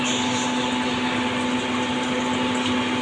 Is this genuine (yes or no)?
yes